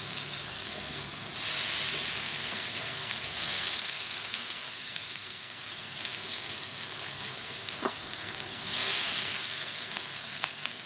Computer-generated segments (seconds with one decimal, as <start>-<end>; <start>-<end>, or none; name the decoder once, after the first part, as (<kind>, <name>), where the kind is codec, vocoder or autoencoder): 0.0-1.3 (codec, SNAC); 2.1-10.9